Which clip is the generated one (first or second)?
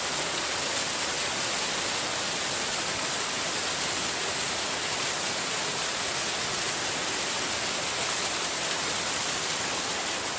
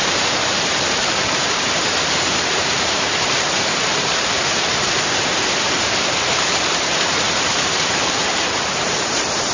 second